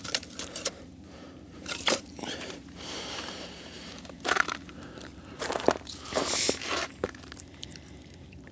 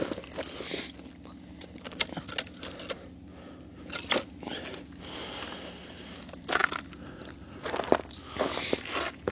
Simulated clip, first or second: first